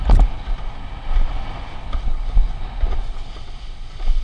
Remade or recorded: recorded